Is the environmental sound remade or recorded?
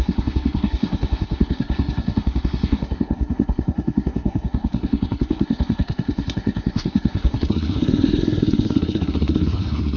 remade